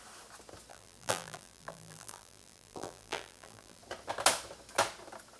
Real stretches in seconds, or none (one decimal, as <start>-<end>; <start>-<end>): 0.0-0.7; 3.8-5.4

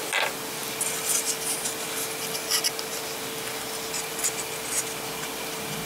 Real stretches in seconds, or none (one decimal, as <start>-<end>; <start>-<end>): 0.0-5.9

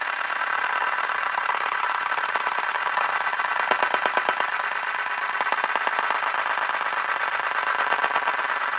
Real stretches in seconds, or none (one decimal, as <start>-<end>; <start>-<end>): 3.3-8.4